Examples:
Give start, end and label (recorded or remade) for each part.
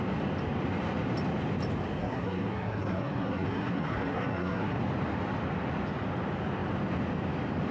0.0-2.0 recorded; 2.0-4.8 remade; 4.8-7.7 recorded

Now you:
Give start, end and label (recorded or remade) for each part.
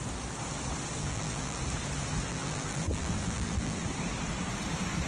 0.0-1.0 recorded; 1.0-1.6 remade; 1.6-2.3 recorded; 2.3-3.8 remade; 3.8-5.1 recorded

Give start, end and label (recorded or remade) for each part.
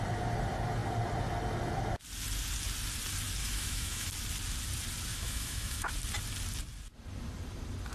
0.0-3.4 recorded; 3.4-4.1 remade; 4.1-5.1 recorded; 5.1-5.9 remade; 5.9-7.9 recorded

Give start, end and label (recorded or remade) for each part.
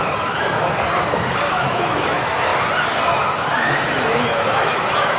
0.0-1.5 recorded; 1.5-2.5 remade; 2.5-3.2 recorded; 3.2-5.2 remade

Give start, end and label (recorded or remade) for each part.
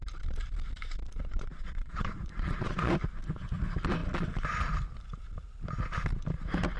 0.0-1.2 recorded; 1.2-2.9 remade; 2.9-6.8 recorded